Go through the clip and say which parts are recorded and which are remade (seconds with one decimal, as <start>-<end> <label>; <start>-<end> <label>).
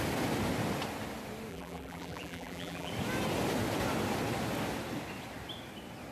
0.0-1.5 recorded; 1.5-2.9 remade; 2.9-6.1 recorded